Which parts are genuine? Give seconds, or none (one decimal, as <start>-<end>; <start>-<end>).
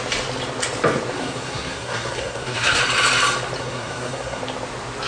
0.0-1.2; 2.8-3.6; 4.4-5.1